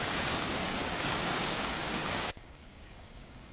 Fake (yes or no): yes